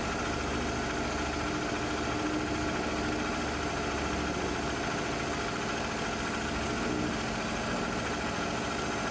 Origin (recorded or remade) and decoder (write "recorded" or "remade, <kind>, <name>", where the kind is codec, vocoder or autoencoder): recorded